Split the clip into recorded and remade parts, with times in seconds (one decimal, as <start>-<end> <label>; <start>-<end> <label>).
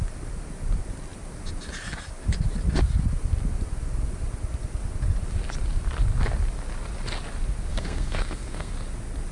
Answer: 0.0-7.7 recorded; 7.7-8.7 remade; 8.7-9.3 recorded